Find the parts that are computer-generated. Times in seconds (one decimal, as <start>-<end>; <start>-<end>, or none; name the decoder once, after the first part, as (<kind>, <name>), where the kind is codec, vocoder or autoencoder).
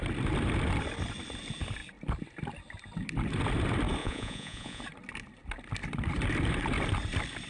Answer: 4.0-4.8 (vocoder, Vocos)